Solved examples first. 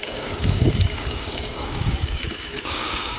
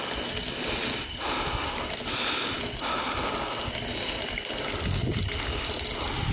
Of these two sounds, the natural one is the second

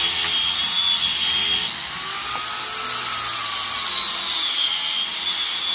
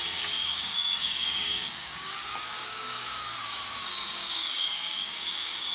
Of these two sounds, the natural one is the first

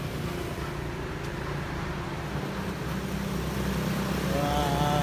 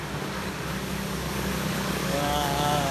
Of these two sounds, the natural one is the first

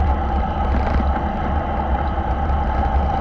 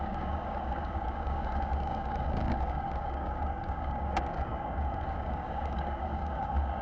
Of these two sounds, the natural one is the first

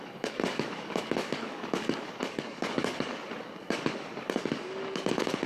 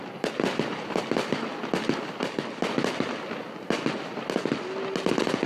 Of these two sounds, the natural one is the second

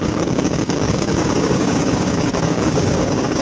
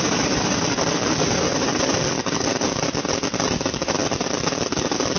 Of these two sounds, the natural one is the second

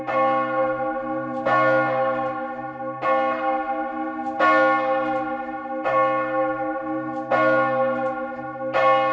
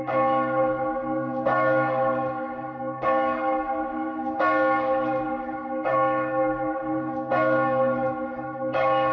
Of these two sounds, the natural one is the first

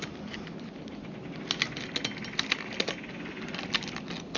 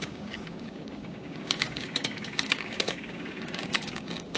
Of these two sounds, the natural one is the first